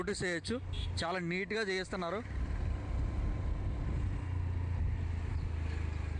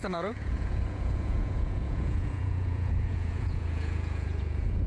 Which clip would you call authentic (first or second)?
first